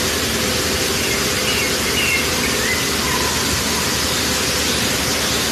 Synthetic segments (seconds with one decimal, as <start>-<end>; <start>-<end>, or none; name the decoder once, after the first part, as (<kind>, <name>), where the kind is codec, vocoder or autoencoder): none